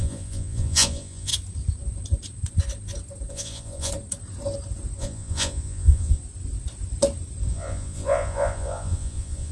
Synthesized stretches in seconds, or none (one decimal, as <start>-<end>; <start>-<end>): 0.0-1.3; 3.3-3.9; 5.0-6.2; 7.5-9.5